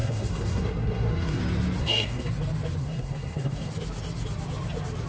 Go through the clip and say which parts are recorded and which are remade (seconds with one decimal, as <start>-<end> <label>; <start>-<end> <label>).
0.0-1.4 remade; 1.4-1.8 recorded; 1.8-2.3 remade; 2.3-2.8 recorded; 2.8-3.7 remade; 3.7-5.1 recorded